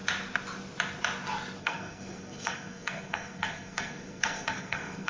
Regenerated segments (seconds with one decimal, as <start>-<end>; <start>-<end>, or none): 1.6-5.1